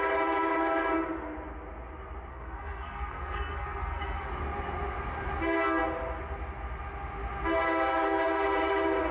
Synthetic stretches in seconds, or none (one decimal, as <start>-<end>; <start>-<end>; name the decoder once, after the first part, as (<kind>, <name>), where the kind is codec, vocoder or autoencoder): 2.3-4.3 (codec, SNAC)